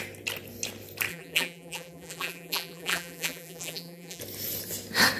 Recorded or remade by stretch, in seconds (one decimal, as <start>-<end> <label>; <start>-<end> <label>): 0.0-1.1 recorded; 1.1-4.2 remade; 4.2-5.2 recorded